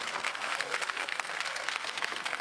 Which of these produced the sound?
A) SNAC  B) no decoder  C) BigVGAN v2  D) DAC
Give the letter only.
A